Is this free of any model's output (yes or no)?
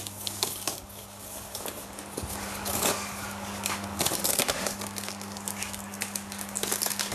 no